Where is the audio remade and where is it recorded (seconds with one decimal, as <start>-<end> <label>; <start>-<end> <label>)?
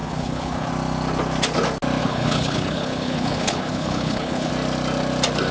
0.0-0.7 remade; 0.7-2.0 recorded; 2.0-4.5 remade; 4.5-5.5 recorded